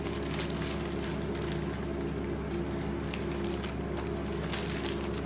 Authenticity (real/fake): real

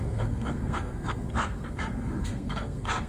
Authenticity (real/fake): fake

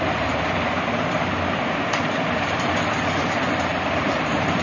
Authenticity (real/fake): real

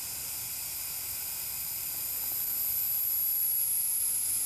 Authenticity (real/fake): real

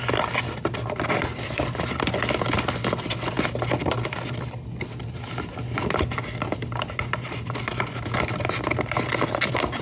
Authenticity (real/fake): real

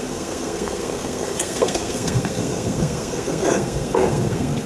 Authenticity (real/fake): fake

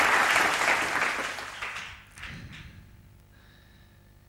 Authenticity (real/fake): real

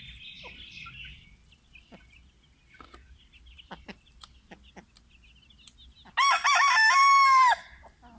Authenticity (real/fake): real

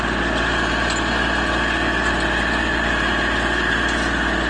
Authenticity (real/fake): real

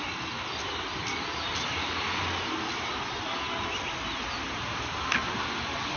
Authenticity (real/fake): real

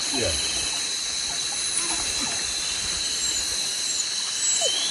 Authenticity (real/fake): real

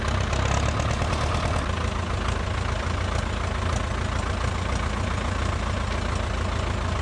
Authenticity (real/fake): real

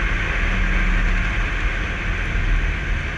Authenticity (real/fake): real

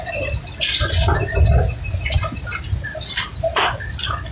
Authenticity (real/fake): real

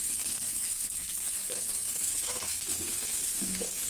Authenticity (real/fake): fake